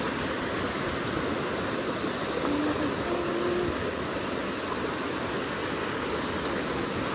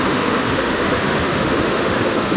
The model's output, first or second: second